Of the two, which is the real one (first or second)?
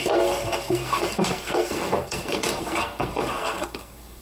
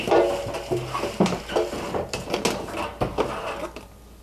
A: second